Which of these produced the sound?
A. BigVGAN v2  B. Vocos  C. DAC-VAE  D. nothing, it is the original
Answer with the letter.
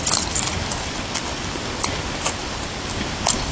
D